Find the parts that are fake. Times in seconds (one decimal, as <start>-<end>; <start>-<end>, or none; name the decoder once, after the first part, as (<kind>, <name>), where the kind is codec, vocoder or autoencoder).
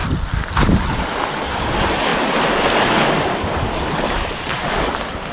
none